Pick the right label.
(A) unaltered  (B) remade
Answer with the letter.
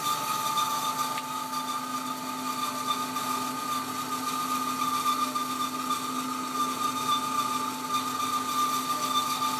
A